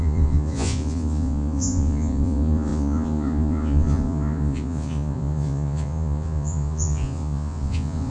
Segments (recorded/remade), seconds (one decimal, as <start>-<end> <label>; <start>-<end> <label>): 0.0-8.1 remade